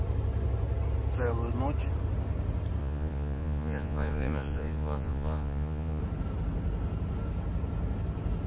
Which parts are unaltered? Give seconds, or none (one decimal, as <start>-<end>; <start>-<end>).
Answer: 0.0-2.8; 6.0-8.5